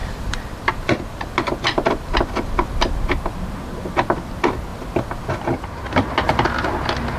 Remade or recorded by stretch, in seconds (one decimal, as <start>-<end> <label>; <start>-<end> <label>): 0.0-4.3 remade; 4.3-4.7 recorded; 4.7-6.1 remade; 6.1-7.2 recorded